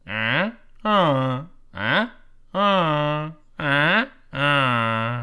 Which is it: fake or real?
real